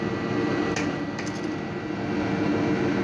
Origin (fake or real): real